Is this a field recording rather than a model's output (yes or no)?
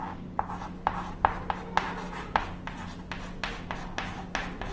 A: yes